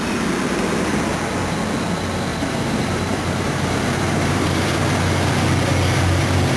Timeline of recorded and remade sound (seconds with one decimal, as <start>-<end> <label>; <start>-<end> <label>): 0.0-2.3 recorded; 2.3-4.8 remade; 4.8-6.6 recorded